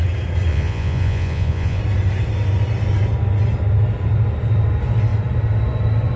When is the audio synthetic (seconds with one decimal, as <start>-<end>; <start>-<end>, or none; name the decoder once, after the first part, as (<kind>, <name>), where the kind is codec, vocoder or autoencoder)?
0.5-1.8 (vocoder, Vocos)